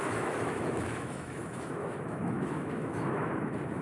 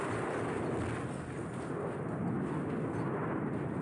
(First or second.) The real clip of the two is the second